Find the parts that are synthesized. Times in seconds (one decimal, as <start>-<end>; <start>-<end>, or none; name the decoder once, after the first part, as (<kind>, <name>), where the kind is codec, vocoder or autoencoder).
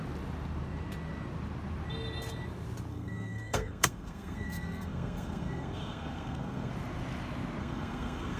2.9-6.7 (codec, SNAC); 7.6-8.4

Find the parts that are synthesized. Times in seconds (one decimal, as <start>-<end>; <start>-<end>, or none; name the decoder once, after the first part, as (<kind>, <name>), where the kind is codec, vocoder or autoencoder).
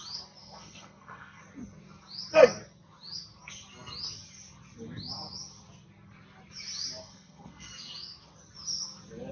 0.4-1.4 (codec, SNAC); 7.0-7.7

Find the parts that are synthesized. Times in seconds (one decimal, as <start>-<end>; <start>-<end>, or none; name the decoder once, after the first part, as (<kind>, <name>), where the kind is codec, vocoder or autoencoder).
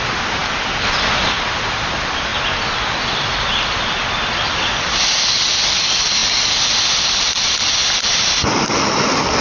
0.0-2.3 (vocoder, BigVGAN v2); 3.0-9.4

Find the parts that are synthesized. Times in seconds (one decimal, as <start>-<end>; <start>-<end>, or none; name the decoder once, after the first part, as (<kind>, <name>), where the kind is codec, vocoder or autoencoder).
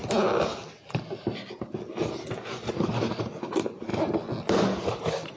none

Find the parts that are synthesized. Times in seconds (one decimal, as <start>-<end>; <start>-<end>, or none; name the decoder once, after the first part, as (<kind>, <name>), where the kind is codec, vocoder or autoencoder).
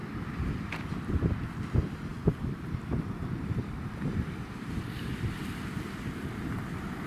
0.0-1.1 (vocoder, BigVGAN v2); 2.1-5.4